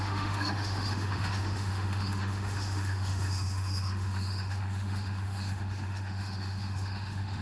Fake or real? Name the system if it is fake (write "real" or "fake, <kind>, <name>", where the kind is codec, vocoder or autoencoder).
fake, autoencoder, DAC-VAE